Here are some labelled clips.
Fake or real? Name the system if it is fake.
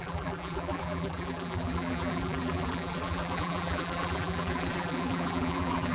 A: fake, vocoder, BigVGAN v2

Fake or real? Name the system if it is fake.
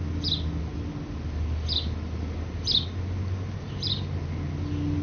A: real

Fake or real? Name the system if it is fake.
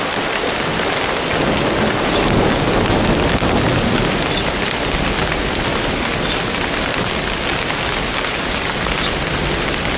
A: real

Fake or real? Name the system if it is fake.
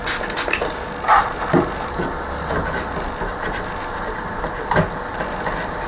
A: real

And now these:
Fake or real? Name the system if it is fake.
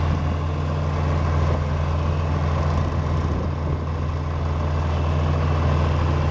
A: real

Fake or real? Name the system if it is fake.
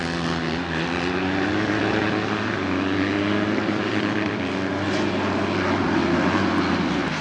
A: real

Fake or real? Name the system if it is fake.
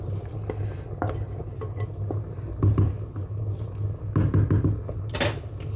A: real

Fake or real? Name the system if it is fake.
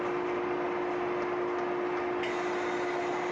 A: real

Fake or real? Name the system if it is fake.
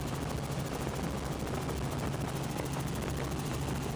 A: real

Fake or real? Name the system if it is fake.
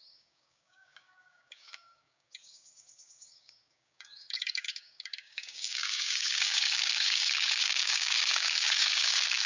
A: fake, codec, DAC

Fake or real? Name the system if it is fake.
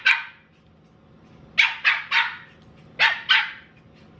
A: real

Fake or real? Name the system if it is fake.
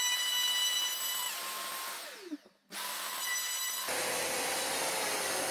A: real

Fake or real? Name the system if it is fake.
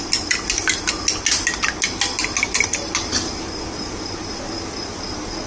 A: real